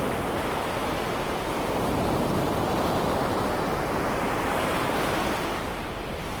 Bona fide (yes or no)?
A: no